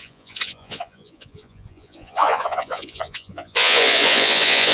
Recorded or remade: remade